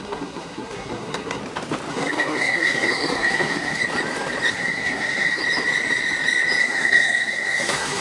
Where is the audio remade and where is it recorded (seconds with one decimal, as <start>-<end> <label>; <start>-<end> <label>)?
0.0-1.4 remade; 1.4-1.9 recorded; 1.9-3.8 remade; 3.8-4.5 recorded; 4.5-5.4 remade; 5.4-6.6 recorded; 6.6-8.0 remade